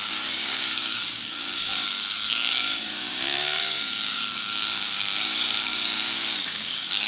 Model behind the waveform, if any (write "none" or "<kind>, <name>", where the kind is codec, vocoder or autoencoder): codec, DAC